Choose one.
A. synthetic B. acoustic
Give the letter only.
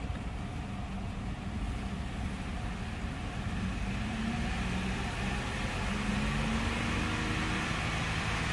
B